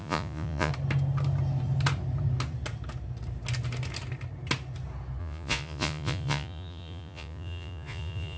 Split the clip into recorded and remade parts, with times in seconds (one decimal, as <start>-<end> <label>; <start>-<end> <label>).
0.0-0.7 remade; 0.7-5.2 recorded; 5.2-8.4 remade